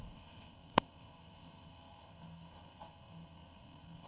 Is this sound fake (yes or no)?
yes